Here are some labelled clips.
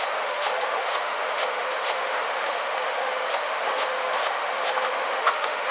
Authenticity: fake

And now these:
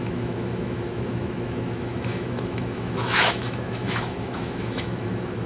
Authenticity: fake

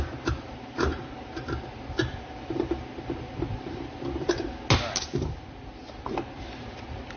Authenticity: real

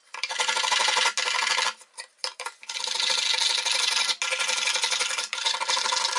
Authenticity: real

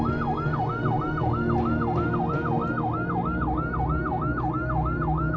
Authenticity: real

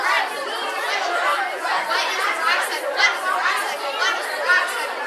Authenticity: real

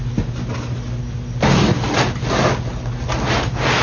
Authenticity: real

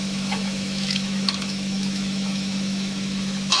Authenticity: fake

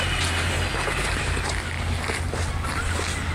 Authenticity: real